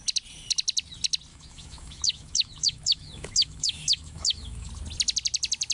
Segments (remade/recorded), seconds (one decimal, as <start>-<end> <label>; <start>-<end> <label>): 0.0-1.3 recorded; 1.3-4.7 remade; 4.7-5.7 recorded